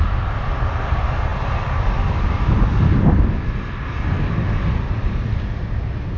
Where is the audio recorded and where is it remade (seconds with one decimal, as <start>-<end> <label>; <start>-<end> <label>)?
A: 0.0-6.2 recorded